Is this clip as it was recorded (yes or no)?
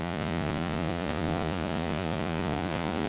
no